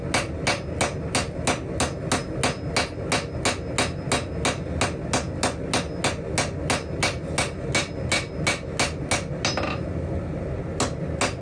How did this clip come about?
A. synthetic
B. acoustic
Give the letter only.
B